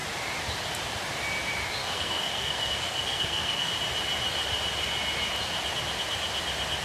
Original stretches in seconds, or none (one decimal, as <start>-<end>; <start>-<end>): 0.0-1.8; 3.7-6.8